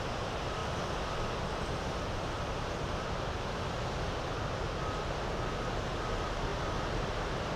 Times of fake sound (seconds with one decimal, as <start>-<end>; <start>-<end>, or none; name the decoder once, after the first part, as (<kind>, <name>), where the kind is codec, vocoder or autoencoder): 6.5-7.6 (vocoder, BigVGAN v2)